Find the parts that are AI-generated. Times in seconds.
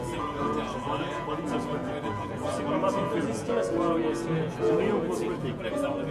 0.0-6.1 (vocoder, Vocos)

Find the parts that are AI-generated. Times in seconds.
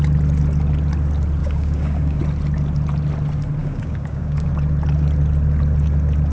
1.4-2.2 (codec, DAC); 3.6-4.5